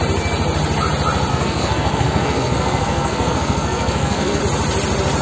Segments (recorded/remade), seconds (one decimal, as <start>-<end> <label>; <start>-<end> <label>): 0.0-1.3 recorded; 1.3-4.4 remade; 4.4-5.2 recorded